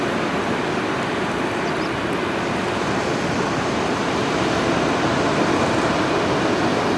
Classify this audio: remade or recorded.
recorded